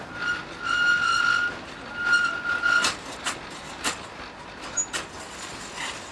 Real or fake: real